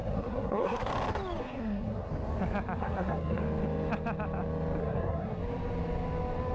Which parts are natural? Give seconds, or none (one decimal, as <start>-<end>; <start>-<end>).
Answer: 0.9-1.4; 2.1-2.8; 3.4-4.8; 5.4-6.5